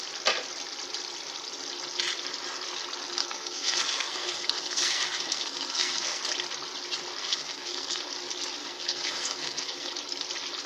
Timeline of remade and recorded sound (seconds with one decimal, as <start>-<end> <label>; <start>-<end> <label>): 0.0-3.2 recorded; 3.2-6.2 remade; 6.2-7.2 recorded; 7.2-8.1 remade; 8.1-8.6 recorded; 8.6-9.9 remade; 9.9-10.7 recorded